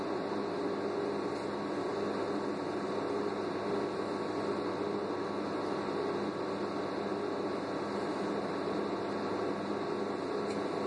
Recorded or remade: recorded